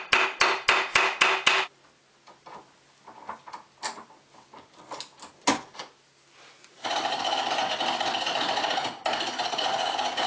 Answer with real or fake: real